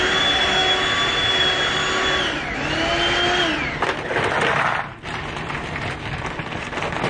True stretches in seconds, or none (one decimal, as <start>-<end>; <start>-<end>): 0.0-7.1